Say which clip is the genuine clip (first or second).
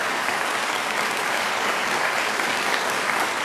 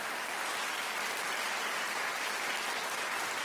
second